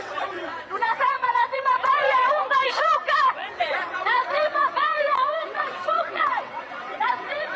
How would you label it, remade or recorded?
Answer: remade